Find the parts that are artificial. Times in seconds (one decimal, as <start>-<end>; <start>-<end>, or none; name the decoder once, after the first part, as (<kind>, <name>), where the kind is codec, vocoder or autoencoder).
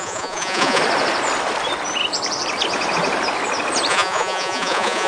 0.0-0.8 (vocoder, Vocos); 3.9-5.1